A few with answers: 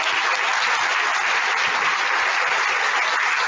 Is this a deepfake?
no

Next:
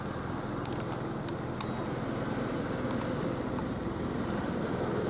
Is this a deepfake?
no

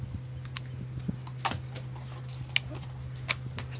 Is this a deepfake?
no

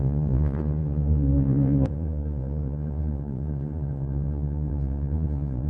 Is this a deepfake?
yes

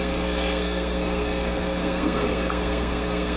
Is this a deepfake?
yes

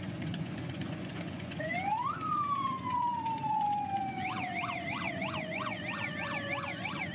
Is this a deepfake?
yes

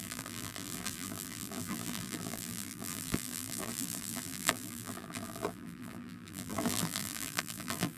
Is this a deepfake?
yes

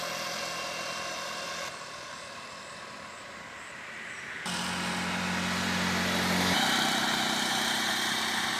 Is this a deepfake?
no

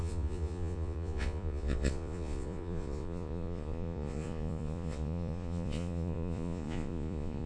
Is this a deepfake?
yes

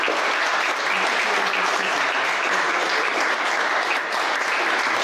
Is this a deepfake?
no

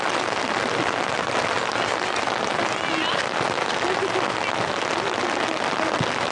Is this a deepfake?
no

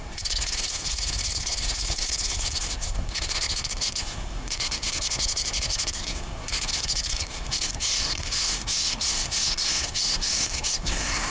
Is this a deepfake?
yes